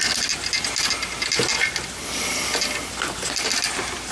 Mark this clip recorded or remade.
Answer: recorded